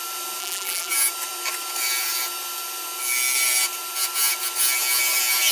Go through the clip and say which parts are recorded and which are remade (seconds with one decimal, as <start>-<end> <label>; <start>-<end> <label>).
0.0-0.4 recorded; 0.4-0.9 remade; 0.9-5.5 recorded